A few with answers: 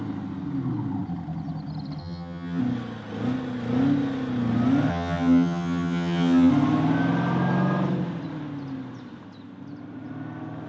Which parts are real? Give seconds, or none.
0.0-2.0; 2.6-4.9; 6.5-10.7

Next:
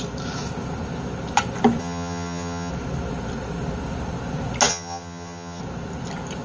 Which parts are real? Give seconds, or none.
0.0-1.8; 2.7-4.7; 5.6-6.4

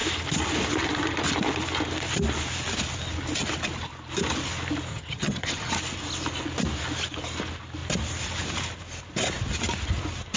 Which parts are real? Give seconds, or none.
0.0-4.9; 5.7-10.4

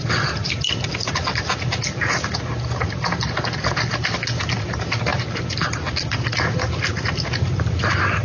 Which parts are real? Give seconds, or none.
0.0-8.2

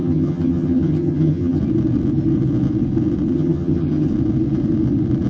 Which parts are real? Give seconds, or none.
1.6-3.3; 4.1-5.3

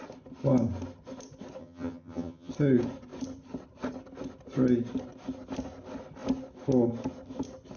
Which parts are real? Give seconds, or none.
0.0-1.6; 2.5-7.8